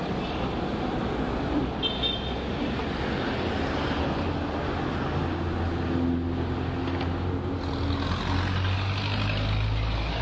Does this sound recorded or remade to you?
recorded